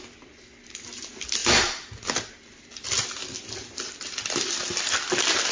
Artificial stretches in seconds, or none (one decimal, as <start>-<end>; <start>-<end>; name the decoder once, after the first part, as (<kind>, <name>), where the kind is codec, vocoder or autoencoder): 0.0-1.4 (vocoder, BigVGAN v2); 2.7-5.5